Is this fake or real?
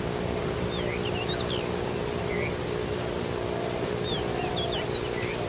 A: real